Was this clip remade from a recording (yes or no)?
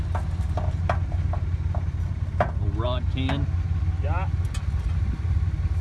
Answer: no